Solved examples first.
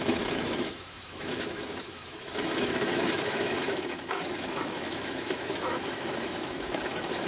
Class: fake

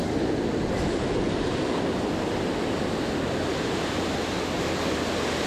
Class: real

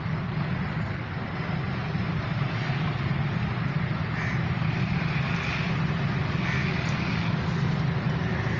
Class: real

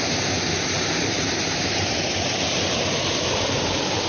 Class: fake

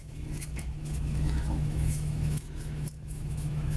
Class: fake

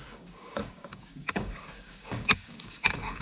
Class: fake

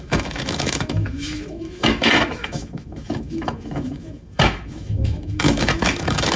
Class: fake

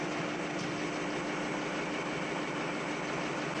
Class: real